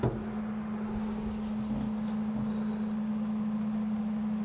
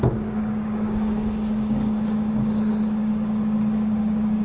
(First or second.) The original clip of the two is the first